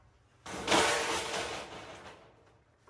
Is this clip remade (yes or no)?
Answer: no